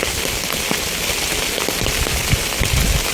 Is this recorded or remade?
recorded